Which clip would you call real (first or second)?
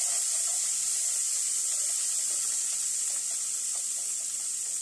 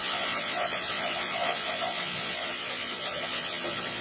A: first